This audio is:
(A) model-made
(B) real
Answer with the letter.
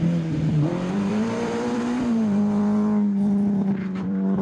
A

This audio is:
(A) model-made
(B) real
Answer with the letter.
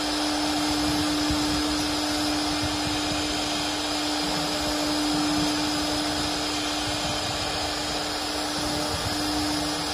B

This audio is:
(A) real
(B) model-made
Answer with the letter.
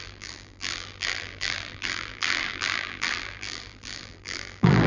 B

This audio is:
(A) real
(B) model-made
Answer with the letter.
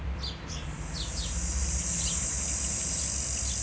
B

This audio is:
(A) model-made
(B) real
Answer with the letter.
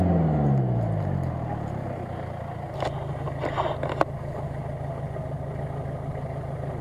B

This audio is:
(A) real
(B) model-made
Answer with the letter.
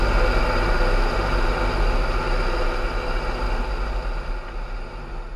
A